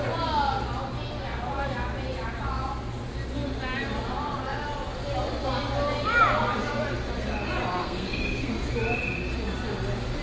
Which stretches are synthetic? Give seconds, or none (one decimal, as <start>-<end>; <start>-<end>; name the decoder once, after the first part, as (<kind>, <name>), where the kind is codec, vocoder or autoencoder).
7.8-8.5 (codec, SNAC)